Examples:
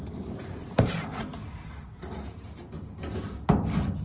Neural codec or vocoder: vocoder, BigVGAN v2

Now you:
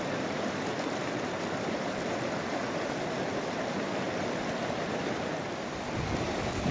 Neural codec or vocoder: none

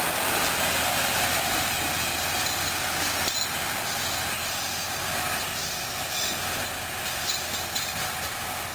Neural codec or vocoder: none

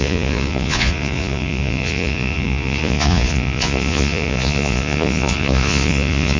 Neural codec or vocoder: vocoder, Vocos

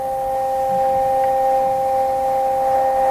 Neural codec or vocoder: none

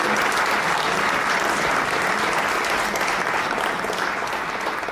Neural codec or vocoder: none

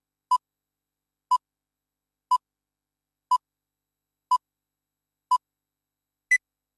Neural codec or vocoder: none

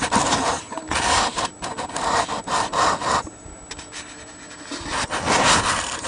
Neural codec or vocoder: none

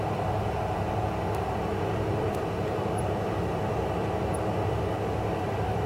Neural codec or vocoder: none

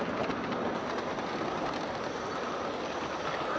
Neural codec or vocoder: none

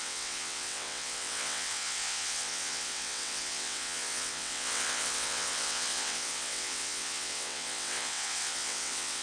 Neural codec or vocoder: vocoder, WaveNeXt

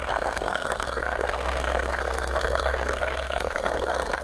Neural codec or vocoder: codec, SNAC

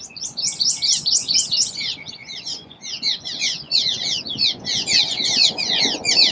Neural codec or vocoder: vocoder, Vocos